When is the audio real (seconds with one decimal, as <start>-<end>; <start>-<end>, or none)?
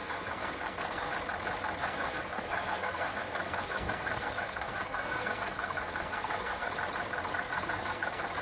1.1-1.8; 6.7-7.3